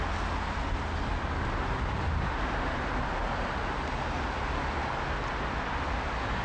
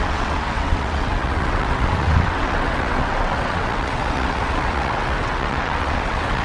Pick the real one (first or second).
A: first